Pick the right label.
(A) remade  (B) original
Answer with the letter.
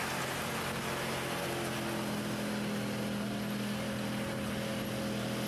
B